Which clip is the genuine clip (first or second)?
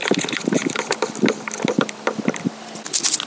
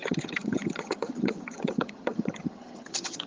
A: first